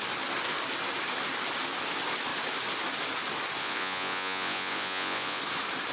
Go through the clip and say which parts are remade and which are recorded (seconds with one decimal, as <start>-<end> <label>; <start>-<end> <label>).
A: 0.0-3.6 recorded; 3.6-5.4 remade; 5.4-5.9 recorded